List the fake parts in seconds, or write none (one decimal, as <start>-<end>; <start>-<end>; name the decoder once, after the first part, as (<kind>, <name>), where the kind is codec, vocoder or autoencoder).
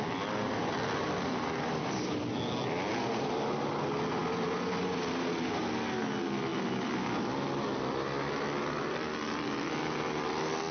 none